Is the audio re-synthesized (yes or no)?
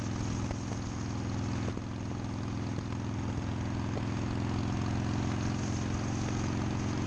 no